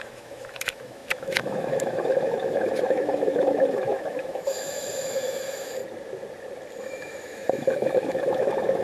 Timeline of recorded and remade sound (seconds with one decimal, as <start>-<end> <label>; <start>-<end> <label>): 0.0-5.8 remade; 5.8-6.8 recorded; 6.8-8.8 remade

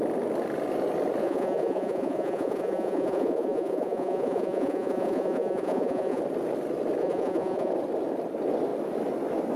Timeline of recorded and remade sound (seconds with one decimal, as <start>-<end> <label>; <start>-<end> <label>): 0.0-1.2 recorded; 1.2-6.2 remade; 6.2-7.0 recorded; 7.0-7.7 remade; 7.7-9.6 recorded

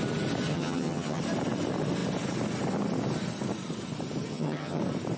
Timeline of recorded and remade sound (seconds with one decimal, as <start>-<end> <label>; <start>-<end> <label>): 0.0-0.5 recorded; 0.5-1.2 remade; 1.2-4.3 recorded; 4.3-4.8 remade; 4.8-5.2 recorded

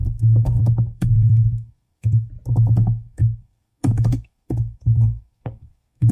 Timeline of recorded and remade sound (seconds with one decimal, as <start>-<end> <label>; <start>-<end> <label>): 0.0-2.3 remade; 2.3-2.8 recorded; 2.8-6.1 remade

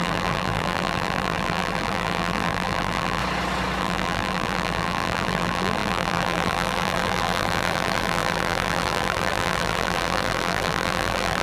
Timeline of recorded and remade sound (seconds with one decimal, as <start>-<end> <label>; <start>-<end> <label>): 0.0-3.2 remade; 3.2-3.8 recorded; 3.8-11.4 remade

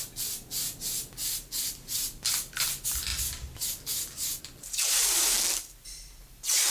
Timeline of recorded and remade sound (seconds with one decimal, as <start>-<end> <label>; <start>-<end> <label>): 0.0-6.7 recorded

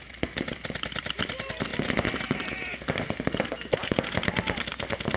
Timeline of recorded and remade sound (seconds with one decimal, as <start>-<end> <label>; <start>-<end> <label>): 0.0-5.2 recorded

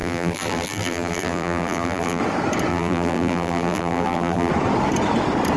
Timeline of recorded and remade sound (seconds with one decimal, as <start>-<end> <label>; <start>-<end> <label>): 0.0-2.2 remade; 2.2-2.7 recorded; 2.7-4.5 remade; 4.5-5.6 recorded